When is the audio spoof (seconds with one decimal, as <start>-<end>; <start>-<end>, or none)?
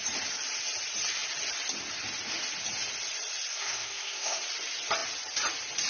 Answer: 3.5-4.4